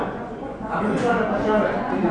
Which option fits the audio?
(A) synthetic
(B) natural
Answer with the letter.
A